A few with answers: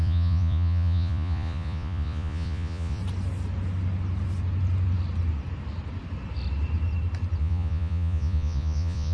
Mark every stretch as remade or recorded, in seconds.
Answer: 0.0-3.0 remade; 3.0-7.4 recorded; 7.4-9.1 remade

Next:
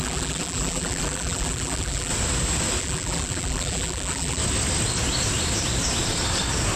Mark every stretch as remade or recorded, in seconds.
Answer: 0.0-2.1 remade; 2.1-2.8 recorded; 2.8-4.4 remade; 4.4-6.8 recorded